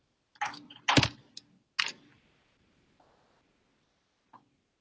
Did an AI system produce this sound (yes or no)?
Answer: no